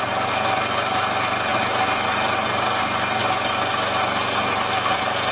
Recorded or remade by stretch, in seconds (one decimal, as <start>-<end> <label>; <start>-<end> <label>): 0.0-5.3 recorded